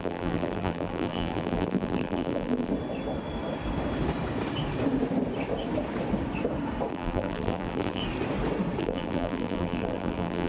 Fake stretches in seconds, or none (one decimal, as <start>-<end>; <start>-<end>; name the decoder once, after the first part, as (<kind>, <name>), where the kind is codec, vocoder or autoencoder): 0.0-2.7 (vocoder, BigVGAN v2); 6.9-8.0; 8.8-10.5